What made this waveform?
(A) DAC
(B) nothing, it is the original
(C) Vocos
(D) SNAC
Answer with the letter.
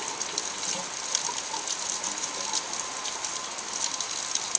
B